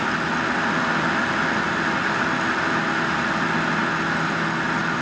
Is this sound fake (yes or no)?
no